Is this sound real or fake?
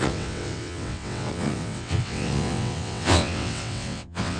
fake